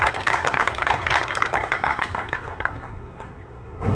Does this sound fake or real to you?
fake